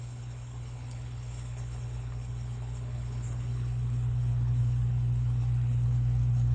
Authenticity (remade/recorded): remade